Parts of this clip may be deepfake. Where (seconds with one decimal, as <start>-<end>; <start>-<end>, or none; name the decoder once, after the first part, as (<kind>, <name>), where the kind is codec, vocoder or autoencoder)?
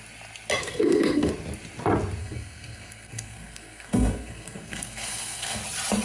0.6-1.3 (codec, SNAC); 2.2-5.6